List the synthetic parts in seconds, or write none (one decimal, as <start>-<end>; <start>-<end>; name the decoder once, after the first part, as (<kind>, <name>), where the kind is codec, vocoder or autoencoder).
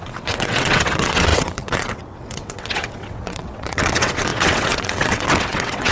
0.0-5.9 (vocoder, WaveNeXt)